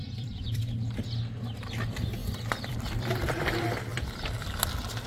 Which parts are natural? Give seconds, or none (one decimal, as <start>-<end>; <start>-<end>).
0.6-2.2; 3.4-3.9; 4.6-5.1